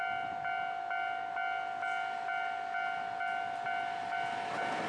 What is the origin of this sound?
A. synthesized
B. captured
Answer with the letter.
B